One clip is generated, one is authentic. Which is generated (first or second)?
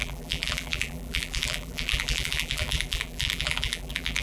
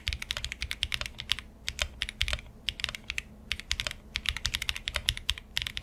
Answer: first